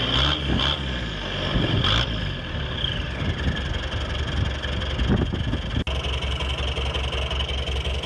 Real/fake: real